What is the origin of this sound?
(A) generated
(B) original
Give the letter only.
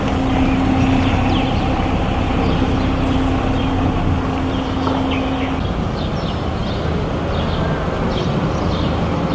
B